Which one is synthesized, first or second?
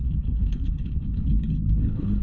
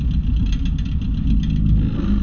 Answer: first